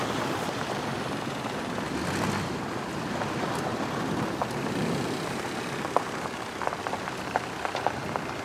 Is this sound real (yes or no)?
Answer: yes